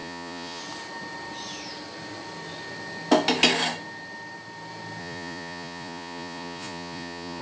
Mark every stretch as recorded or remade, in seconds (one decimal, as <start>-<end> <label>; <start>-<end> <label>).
0.0-0.6 remade; 0.6-5.0 recorded; 5.0-7.4 remade